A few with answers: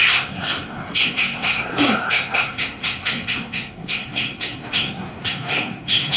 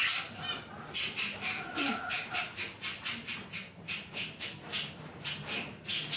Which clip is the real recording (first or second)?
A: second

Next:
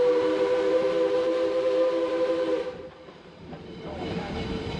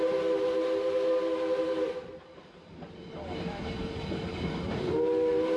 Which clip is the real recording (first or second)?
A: second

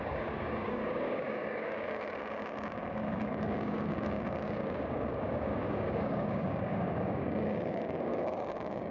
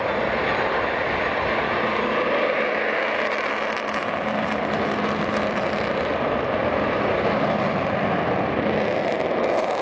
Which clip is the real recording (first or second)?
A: second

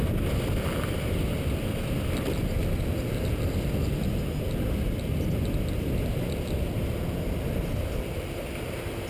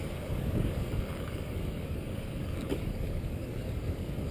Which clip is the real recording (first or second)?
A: first